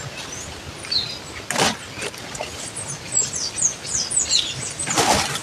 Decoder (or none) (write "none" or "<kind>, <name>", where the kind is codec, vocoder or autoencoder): none